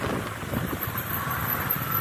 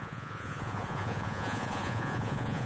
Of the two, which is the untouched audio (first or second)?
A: first